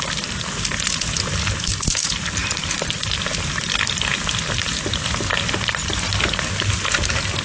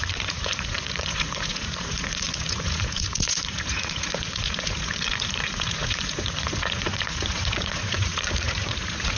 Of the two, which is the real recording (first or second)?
first